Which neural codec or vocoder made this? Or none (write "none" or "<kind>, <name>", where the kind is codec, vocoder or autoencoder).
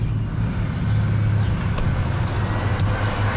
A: none